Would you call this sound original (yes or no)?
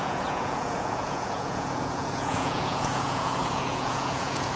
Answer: no